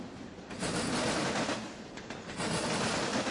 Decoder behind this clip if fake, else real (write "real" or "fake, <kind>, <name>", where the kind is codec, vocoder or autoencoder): real